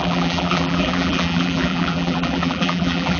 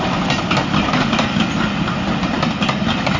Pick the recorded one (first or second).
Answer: second